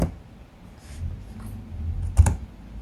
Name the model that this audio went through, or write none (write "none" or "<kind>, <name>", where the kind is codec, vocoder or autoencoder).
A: none